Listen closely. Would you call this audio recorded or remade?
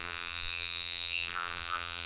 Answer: remade